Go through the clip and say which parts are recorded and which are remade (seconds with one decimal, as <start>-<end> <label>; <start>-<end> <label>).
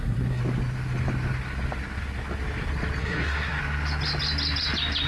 0.0-0.4 remade; 0.4-3.0 recorded; 3.0-3.6 remade; 3.6-5.1 recorded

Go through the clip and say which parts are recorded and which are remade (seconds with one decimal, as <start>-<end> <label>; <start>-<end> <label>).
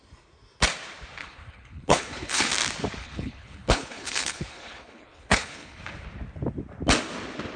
0.0-1.2 recorded; 1.2-2.5 remade; 2.5-3.0 recorded; 3.0-5.8 remade; 5.8-7.6 recorded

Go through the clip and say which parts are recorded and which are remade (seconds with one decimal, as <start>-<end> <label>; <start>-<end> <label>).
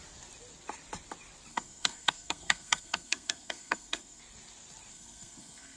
0.0-1.5 recorded; 1.5-4.2 remade; 4.2-4.9 recorded; 4.9-5.8 remade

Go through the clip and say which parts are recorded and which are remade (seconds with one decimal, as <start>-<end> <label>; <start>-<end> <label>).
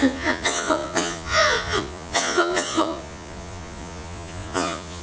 0.0-5.0 remade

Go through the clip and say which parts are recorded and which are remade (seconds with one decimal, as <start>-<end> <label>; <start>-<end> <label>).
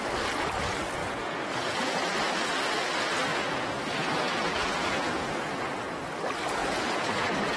0.0-1.0 recorded; 1.0-2.2 remade; 2.2-3.3 recorded; 3.3-5.5 remade; 5.5-6.6 recorded; 6.6-7.6 remade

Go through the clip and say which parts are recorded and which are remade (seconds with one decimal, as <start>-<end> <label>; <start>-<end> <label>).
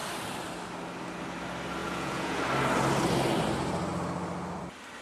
0.0-1.8 recorded; 1.8-2.4 remade; 2.4-5.0 recorded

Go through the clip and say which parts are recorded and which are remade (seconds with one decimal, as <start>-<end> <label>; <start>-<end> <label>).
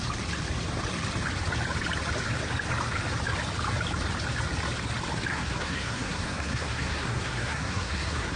0.0-5.3 recorded; 5.3-8.4 remade